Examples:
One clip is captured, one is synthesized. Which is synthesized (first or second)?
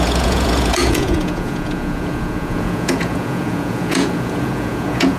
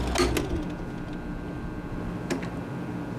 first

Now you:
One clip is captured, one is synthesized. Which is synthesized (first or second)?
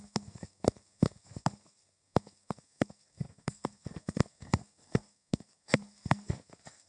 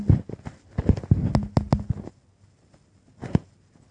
first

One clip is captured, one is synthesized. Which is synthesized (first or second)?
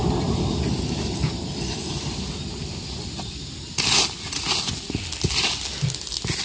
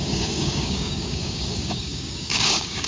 second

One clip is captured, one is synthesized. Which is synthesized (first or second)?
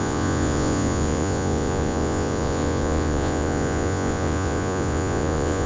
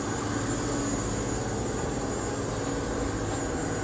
first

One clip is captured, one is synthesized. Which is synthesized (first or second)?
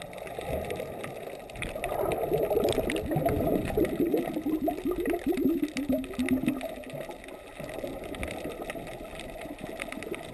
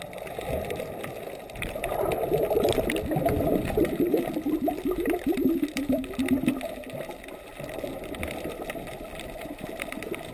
second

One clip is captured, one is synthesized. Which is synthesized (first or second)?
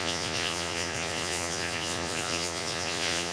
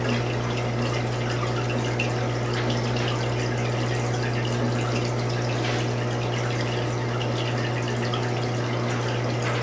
first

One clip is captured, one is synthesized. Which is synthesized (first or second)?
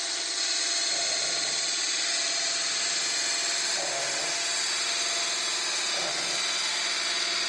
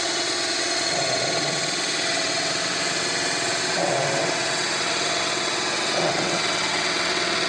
second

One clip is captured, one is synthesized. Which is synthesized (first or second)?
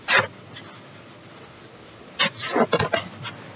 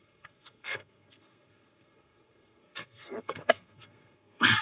second